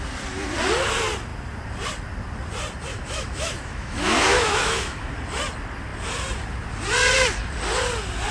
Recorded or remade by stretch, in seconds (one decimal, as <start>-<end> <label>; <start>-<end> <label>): 0.0-2.9 recorded; 2.9-5.1 remade; 5.1-8.3 recorded